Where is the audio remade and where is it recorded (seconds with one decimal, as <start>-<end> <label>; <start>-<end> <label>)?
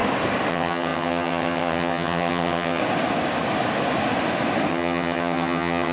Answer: 0.0-0.5 recorded; 0.5-2.8 remade; 2.8-4.7 recorded; 4.7-5.9 remade